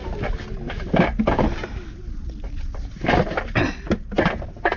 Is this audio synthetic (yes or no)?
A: no